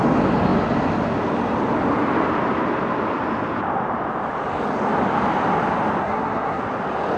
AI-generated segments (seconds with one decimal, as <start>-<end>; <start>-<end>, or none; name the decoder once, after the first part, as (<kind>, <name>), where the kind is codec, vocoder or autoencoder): 6.0-6.6 (codec, SNAC)